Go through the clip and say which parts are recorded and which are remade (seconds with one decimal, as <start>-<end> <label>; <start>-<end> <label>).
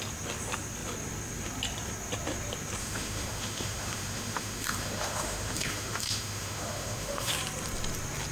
0.0-2.8 recorded; 2.8-7.3 remade; 7.3-8.3 recorded